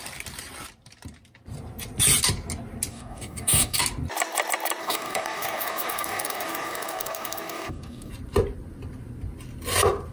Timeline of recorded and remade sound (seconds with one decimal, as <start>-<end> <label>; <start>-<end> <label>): 0.0-2.9 recorded; 2.9-3.8 remade; 3.8-4.8 recorded; 4.8-8.1 remade; 8.1-10.1 recorded